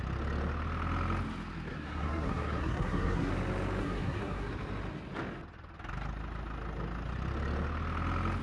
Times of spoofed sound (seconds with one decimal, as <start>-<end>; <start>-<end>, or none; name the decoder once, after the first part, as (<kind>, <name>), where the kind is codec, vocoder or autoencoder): 1.7-3.3 (codec, SNAC); 3.8-4.5